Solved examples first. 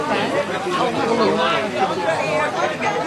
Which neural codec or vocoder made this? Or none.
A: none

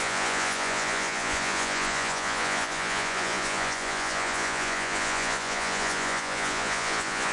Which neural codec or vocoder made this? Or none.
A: vocoder, Vocos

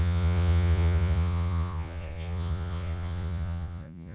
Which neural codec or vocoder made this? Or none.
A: vocoder, Vocos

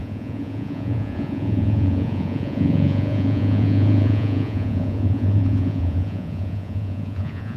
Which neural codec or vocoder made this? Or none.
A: vocoder, Vocos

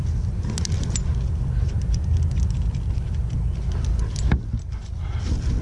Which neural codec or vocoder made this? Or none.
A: none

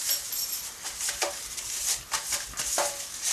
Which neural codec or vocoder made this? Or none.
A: none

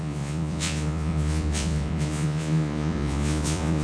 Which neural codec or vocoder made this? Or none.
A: vocoder, Vocos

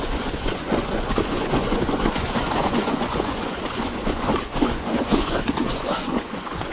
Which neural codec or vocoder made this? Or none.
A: vocoder, Vocos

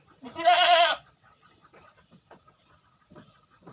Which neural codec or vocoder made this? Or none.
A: vocoder, Vocos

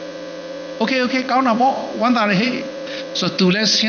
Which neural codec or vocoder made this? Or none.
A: vocoder, Vocos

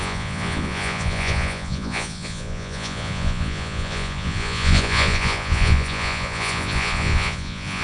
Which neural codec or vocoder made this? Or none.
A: vocoder, Vocos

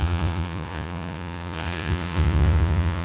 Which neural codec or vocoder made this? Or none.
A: vocoder, Vocos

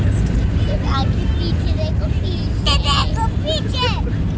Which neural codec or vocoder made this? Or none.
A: none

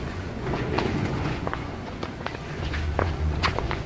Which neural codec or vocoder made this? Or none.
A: vocoder, Vocos